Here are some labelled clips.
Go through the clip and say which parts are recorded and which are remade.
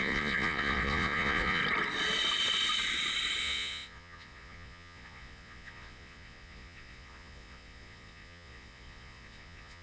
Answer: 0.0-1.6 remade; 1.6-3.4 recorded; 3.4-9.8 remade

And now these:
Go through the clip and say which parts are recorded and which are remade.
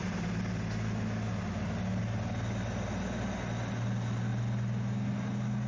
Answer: 0.0-5.7 recorded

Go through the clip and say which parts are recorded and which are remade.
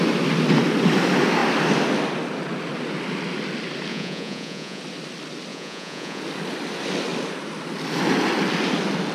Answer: 0.0-3.9 recorded; 3.9-4.8 remade; 4.8-5.5 recorded; 5.5-6.2 remade; 6.2-9.1 recorded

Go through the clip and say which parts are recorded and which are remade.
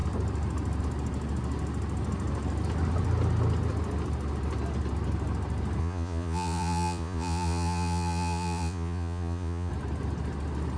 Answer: 0.0-5.8 recorded; 5.8-9.7 remade; 9.7-10.8 recorded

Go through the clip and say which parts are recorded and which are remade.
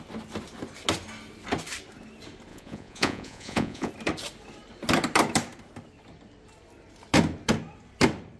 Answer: 0.0-2.5 recorded; 2.5-3.9 remade; 3.9-8.4 recorded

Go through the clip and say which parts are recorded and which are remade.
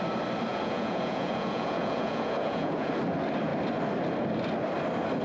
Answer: 0.0-0.5 recorded; 0.5-2.9 remade; 2.9-5.2 recorded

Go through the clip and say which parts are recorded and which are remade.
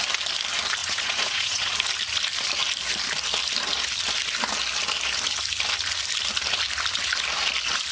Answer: 0.0-0.8 recorded; 0.8-1.7 remade; 1.7-7.9 recorded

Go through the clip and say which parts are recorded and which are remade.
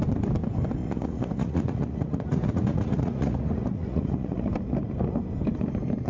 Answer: 0.0-0.8 recorded; 0.8-4.5 remade; 4.5-6.1 recorded